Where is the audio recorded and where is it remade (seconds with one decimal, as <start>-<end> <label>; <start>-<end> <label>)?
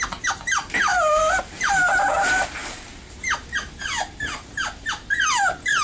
0.0-5.8 recorded